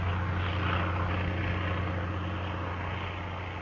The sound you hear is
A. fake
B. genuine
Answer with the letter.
B